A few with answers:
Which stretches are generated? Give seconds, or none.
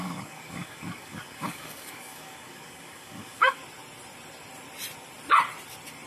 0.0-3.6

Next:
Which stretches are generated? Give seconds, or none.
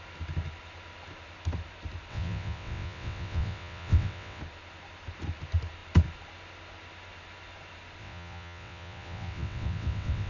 2.1-4.4; 8.0-10.3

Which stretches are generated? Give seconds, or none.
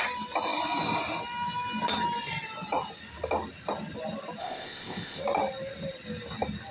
4.4-5.2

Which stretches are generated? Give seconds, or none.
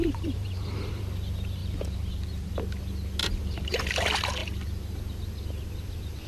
0.0-1.0; 1.6-2.5; 3.2-3.8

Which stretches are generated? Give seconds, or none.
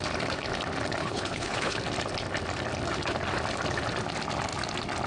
1.0-1.8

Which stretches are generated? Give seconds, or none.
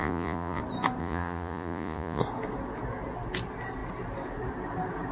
0.0-0.6; 1.0-2.2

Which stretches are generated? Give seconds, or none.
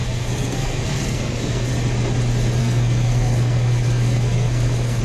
0.0-1.7; 2.6-5.0